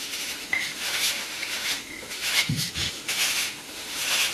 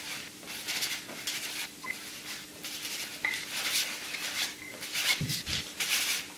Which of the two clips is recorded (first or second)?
second